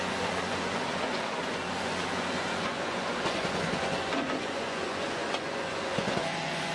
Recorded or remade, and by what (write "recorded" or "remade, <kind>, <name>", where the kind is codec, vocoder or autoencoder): remade, vocoder, Vocos